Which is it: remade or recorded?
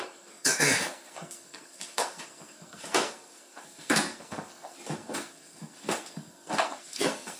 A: remade